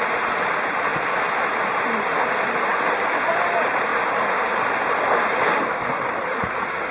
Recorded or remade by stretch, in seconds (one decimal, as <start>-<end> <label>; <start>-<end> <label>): 0.0-0.9 remade; 0.9-1.6 recorded; 1.6-2.1 remade; 2.1-2.7 recorded; 2.7-6.9 remade